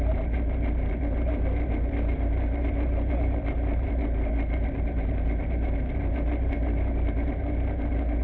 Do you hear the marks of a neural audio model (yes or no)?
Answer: yes